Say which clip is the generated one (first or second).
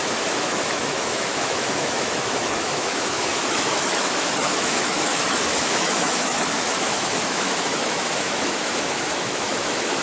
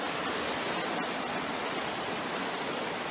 first